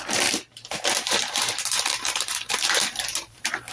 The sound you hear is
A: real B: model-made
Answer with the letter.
B